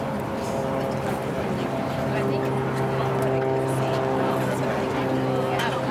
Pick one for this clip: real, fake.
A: real